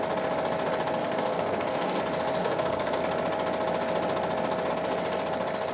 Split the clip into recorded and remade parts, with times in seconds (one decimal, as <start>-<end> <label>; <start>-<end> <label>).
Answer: 0.0-1.0 recorded; 1.0-2.0 remade; 2.0-2.4 recorded; 2.4-3.0 remade; 3.0-5.7 recorded